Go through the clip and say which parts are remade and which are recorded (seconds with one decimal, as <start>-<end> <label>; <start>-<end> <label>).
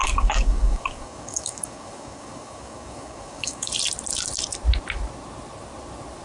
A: 0.0-3.7 remade; 3.7-6.2 recorded